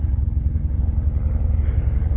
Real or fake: fake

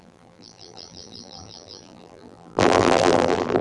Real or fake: fake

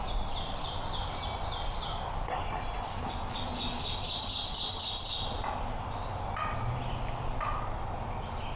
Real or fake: real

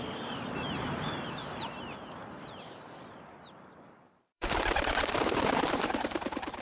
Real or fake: fake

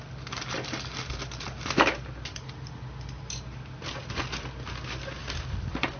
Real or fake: real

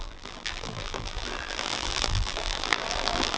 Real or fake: fake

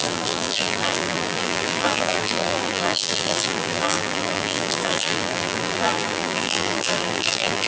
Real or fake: fake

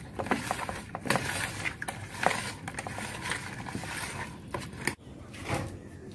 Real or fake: real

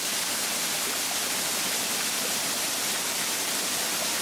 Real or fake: real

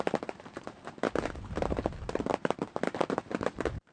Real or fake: fake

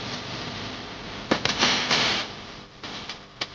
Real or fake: fake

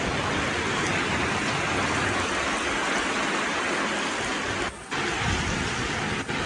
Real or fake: real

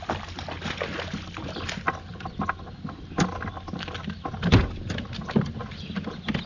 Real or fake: real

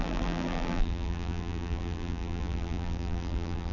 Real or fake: fake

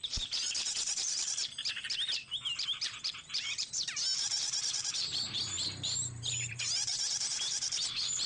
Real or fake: fake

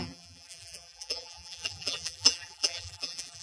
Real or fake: fake